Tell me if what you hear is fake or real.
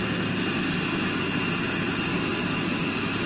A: real